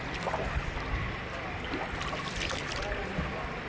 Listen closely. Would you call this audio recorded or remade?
recorded